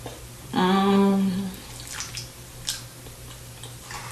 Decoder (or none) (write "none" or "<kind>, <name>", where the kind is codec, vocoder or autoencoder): none